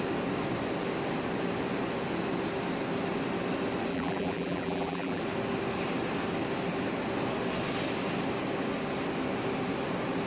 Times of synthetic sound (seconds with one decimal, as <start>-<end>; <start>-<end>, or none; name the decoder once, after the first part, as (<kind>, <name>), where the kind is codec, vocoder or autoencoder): 3.9-5.2 (vocoder, BigVGAN v2)